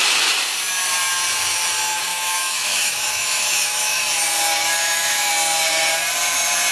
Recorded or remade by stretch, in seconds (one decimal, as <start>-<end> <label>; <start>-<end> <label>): 0.0-2.1 recorded; 2.1-4.0 remade; 4.0-4.8 recorded; 4.8-5.3 remade; 5.3-6.7 recorded